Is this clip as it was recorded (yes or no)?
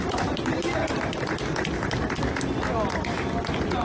yes